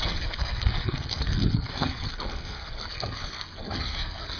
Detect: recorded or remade remade